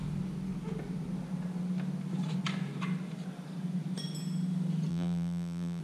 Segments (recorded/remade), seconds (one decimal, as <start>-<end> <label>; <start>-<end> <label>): 0.0-4.9 recorded; 4.9-5.8 remade